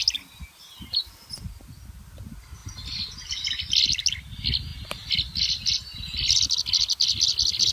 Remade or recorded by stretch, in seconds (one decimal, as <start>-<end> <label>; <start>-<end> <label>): 0.0-7.7 recorded